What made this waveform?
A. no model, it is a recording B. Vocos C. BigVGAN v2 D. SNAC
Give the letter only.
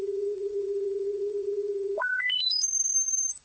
B